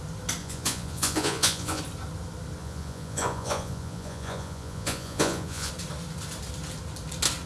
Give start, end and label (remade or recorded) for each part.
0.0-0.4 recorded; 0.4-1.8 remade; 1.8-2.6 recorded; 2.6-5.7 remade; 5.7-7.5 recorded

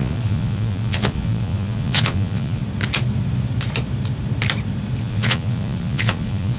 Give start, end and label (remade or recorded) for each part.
0.0-2.6 remade; 2.6-5.0 recorded; 5.0-6.6 remade